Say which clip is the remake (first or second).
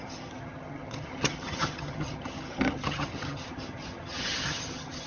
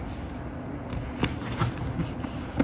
first